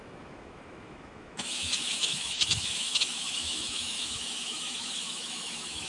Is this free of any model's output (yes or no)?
no